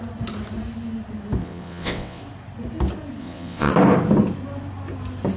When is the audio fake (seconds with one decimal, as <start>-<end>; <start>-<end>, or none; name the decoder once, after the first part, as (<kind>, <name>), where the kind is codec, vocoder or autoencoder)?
1.4-2.2 (vocoder, WaveNeXt); 3.2-3.7